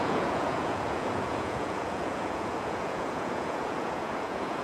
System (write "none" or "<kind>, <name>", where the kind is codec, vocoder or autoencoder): vocoder, Vocos